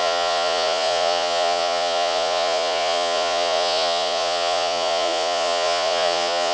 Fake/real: fake